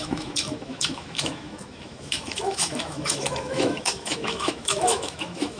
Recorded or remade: remade